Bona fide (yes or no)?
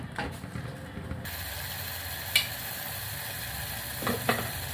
yes